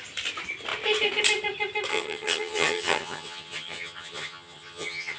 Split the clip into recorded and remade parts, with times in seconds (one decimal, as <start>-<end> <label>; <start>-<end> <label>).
0.0-1.9 recorded; 1.9-5.2 remade